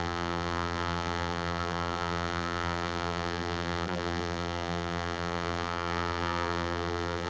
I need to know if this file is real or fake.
fake